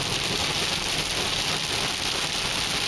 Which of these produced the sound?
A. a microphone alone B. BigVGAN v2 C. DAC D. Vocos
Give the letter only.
A